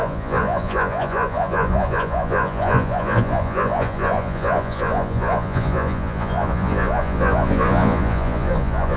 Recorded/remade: remade